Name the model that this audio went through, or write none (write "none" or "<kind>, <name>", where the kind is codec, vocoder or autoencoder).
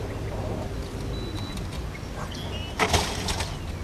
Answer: none